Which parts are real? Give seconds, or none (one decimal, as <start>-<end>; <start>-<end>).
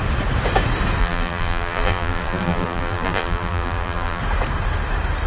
0.0-1.0; 4.2-5.3